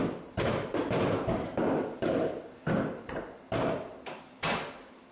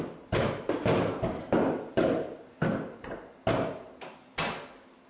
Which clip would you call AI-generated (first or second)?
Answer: first